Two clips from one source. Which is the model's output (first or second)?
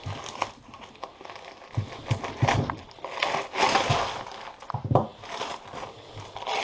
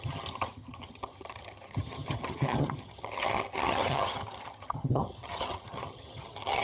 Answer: second